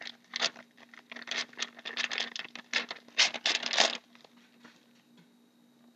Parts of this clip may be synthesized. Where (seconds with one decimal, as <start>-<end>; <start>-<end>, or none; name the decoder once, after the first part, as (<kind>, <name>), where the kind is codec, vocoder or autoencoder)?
none